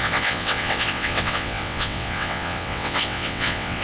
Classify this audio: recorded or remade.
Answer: remade